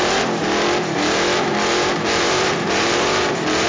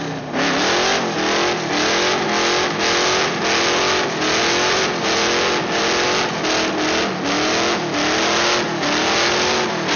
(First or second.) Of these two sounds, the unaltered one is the second